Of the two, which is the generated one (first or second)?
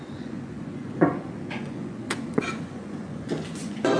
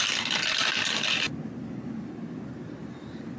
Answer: first